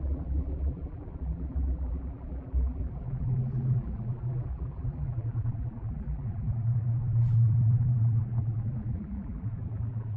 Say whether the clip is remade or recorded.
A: remade